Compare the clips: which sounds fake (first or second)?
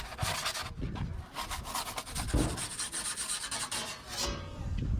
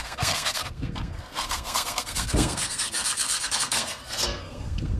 second